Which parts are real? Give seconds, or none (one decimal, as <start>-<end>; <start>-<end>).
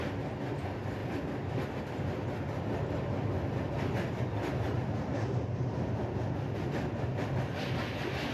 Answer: 0.0-8.3